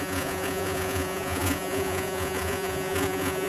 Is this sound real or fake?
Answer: fake